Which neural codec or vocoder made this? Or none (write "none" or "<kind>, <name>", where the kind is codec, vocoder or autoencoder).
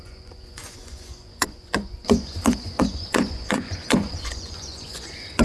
vocoder, Vocos